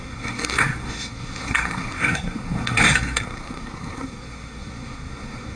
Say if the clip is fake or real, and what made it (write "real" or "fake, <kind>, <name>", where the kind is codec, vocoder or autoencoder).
fake, codec, SNAC